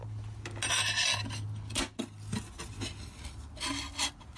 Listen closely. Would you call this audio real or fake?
real